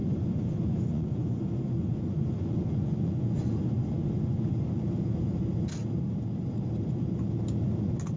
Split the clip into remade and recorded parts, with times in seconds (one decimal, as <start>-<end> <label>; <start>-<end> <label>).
0.0-1.4 remade; 1.4-1.8 recorded; 1.8-4.8 remade; 4.8-8.2 recorded